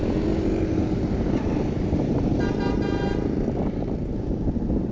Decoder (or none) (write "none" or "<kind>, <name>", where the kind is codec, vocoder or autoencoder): none